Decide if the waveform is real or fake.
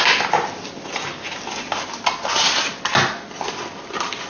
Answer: real